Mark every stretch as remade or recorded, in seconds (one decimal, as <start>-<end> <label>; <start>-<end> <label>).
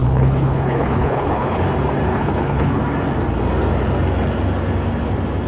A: 0.0-1.6 remade; 1.6-2.1 recorded; 2.1-2.8 remade; 2.8-5.5 recorded